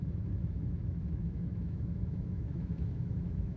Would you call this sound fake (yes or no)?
yes